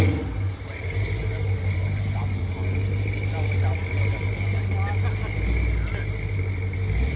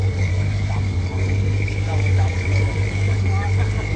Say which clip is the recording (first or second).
first